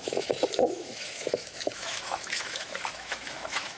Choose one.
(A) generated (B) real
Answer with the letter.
A